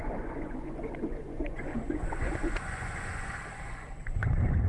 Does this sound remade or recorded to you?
remade